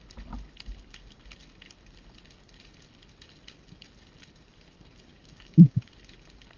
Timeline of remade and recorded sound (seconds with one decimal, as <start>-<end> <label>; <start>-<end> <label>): 0.0-5.1 recorded; 5.1-5.9 remade; 5.9-6.6 recorded

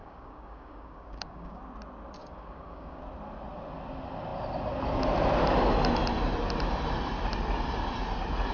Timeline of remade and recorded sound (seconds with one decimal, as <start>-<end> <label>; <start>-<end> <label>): 0.0-1.6 remade; 1.6-2.2 recorded; 2.2-3.0 remade; 3.0-8.5 recorded

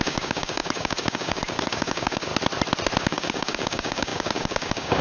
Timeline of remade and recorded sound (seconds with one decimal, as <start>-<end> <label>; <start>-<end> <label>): 0.0-2.3 remade; 2.3-3.0 recorded; 3.0-5.0 remade

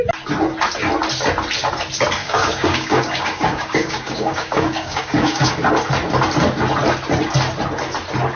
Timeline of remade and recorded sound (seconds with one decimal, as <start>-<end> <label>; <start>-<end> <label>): 0.0-2.2 recorded; 2.2-5.5 remade; 5.5-8.4 recorded